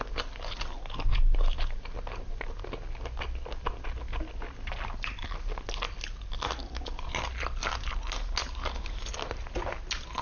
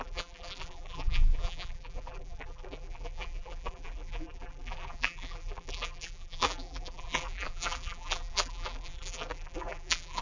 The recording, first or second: first